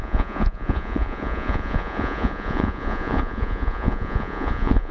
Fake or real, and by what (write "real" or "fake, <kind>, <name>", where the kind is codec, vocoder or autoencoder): fake, vocoder, Vocos